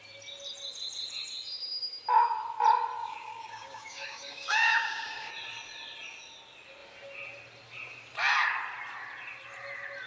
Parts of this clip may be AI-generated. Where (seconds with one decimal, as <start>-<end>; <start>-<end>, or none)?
3.0-5.3